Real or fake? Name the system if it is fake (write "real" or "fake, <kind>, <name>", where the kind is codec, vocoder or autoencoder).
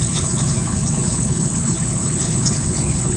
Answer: fake, codec, HILCodec